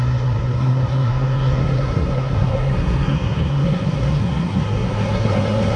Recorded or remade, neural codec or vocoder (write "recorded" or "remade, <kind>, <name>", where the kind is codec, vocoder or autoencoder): remade, codec, SNAC